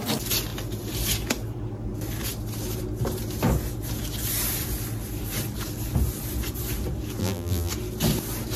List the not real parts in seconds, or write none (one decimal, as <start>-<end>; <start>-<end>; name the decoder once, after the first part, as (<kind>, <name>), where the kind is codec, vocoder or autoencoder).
7.2-7.7 (vocoder, BigVGAN v2)